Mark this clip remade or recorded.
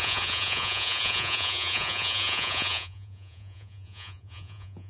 remade